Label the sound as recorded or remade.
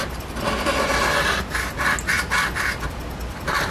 recorded